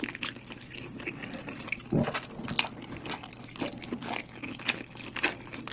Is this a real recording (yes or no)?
yes